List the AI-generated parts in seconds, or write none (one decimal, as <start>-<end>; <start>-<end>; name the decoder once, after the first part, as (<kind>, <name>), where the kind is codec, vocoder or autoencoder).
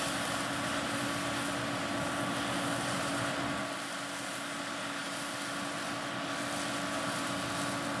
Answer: none